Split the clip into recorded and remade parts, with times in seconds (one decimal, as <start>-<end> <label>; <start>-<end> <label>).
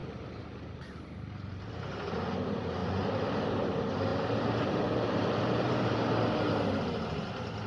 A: 0.0-0.9 remade; 0.9-2.8 recorded; 2.8-3.3 remade; 3.3-4.1 recorded; 4.1-5.7 remade; 5.7-7.7 recorded